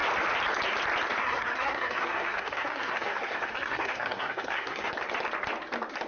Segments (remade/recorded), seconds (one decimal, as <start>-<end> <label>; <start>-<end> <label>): 0.0-1.2 recorded; 1.2-4.9 remade; 4.9-6.1 recorded